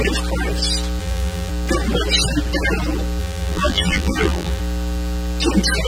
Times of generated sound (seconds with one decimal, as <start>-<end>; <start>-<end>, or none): 1.0-1.5; 3.2-4.6